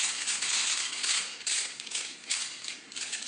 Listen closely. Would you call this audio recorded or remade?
remade